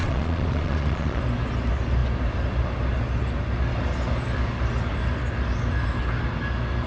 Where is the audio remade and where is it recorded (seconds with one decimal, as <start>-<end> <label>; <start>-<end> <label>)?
0.0-1.2 remade; 1.2-6.9 recorded

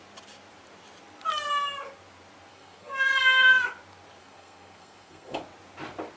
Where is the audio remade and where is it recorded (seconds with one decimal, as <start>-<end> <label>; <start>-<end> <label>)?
0.0-2.5 recorded; 2.5-3.7 remade; 3.7-4.2 recorded; 4.2-5.4 remade; 5.4-6.2 recorded

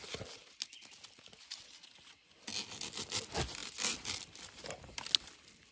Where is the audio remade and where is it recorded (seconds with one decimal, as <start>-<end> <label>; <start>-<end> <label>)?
0.0-5.7 recorded

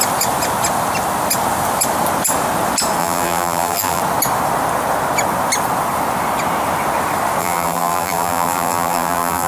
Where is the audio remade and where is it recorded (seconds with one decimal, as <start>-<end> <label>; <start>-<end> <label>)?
0.0-3.0 recorded; 3.0-4.0 remade; 4.0-7.4 recorded; 7.4-9.5 remade

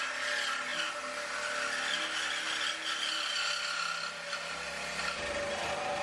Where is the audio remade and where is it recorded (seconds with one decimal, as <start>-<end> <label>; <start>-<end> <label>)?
0.0-6.0 recorded

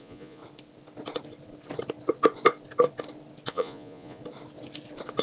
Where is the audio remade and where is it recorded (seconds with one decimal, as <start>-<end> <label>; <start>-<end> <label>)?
0.0-0.4 remade; 0.4-3.5 recorded; 3.5-4.2 remade; 4.2-5.2 recorded

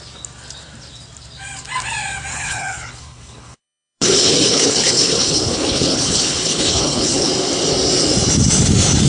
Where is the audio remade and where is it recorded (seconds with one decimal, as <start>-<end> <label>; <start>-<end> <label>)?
0.0-2.3 recorded; 2.3-7.3 remade; 7.3-9.1 recorded

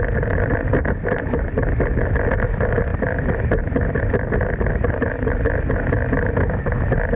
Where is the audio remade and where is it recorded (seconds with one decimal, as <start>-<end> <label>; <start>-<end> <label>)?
0.0-2.9 recorded; 2.9-4.0 remade; 4.0-7.2 recorded